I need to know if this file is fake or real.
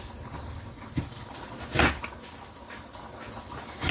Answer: real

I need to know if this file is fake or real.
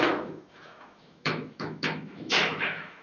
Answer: fake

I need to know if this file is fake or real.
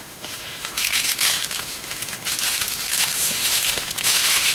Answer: fake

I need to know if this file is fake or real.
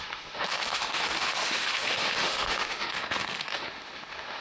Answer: fake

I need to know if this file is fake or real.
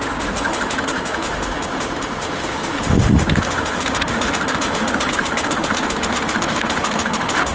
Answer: fake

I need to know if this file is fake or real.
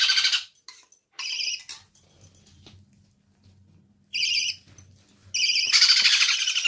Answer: real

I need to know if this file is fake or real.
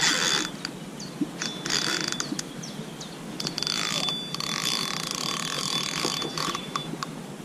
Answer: real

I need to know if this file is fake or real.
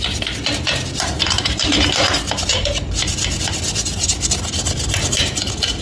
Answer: real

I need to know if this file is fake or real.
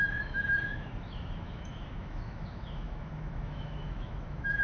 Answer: fake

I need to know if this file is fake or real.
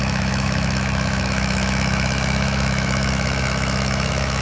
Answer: fake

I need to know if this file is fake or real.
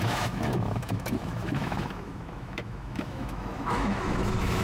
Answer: fake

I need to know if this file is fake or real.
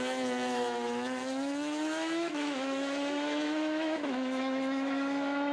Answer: fake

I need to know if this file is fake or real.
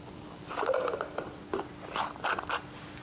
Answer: real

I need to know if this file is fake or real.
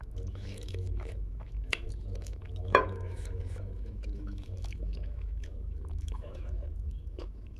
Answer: fake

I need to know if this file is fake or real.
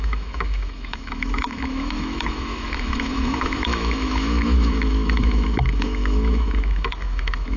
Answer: fake